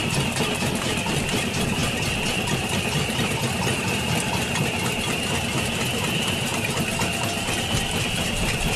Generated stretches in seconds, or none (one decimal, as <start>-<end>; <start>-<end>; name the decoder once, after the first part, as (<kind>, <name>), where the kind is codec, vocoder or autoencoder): 0.0-1.8 (vocoder, BigVGAN v2); 2.8-6.5; 7.5-8.8